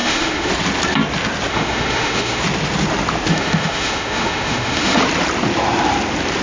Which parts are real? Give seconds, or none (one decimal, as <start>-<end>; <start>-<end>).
0.5-1.5; 2.4-3.3; 5.0-6.4